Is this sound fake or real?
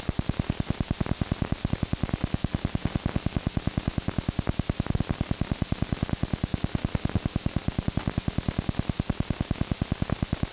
real